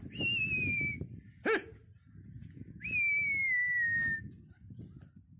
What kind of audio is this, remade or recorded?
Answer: recorded